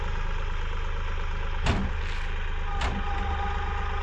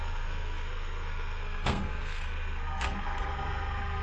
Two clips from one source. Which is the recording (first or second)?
first